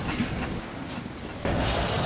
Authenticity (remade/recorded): recorded